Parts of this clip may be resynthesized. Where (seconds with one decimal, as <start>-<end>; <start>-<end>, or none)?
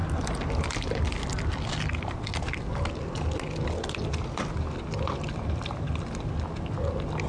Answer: none